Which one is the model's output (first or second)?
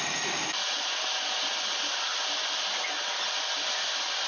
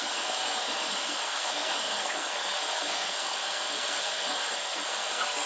second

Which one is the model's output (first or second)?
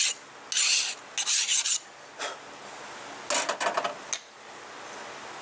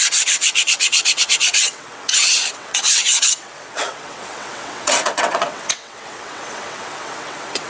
second